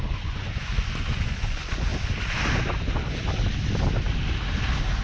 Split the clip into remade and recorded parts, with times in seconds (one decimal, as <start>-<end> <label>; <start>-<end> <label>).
0.0-1.9 remade; 1.9-5.0 recorded